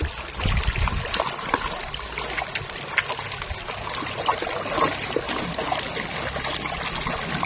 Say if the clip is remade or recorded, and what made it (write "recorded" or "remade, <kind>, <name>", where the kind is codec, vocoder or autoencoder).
recorded